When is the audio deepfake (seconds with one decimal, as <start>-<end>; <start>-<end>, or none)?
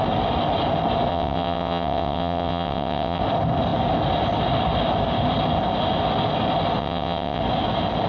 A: 1.1-3.2; 6.8-7.4